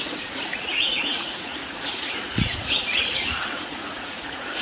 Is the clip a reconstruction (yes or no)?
yes